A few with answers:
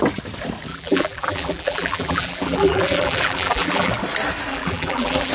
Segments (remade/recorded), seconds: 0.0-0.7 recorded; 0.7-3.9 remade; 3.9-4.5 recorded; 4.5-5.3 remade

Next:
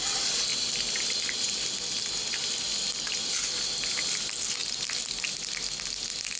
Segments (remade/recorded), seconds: 0.0-0.5 recorded; 0.5-3.4 remade; 3.4-6.4 recorded

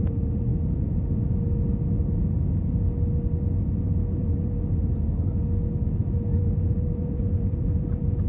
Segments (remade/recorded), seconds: 0.0-0.5 remade; 0.5-4.1 recorded; 4.1-5.4 remade; 5.4-6.0 recorded; 6.0-8.3 remade

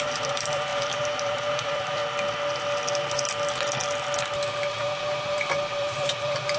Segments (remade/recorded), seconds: 0.0-2.0 remade; 2.0-4.7 recorded; 4.7-6.6 remade

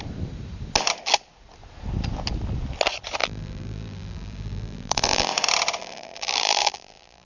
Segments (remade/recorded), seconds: 0.0-3.2 recorded; 3.2-5.3 remade; 5.3-5.8 recorded; 5.8-7.3 remade

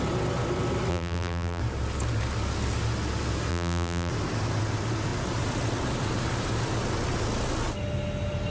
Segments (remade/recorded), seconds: 0.0-0.9 recorded; 0.9-1.6 remade; 1.6-3.5 recorded; 3.5-4.1 remade; 4.1-8.5 recorded